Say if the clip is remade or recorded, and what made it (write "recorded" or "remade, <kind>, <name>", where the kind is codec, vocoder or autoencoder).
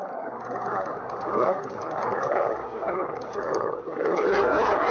remade, codec, SNAC